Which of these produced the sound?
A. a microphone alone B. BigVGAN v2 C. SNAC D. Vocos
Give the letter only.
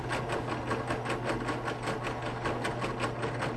A